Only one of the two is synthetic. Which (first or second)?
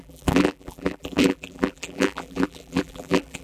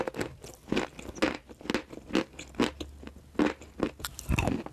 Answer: first